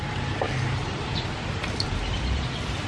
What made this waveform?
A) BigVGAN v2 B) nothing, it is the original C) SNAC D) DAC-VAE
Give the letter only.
B